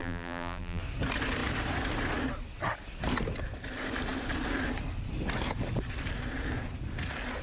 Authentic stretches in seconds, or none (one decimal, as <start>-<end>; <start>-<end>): 0.8-7.4